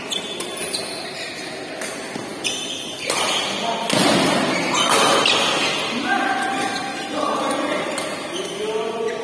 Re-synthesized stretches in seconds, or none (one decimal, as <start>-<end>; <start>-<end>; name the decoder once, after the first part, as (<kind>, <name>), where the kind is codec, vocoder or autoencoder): none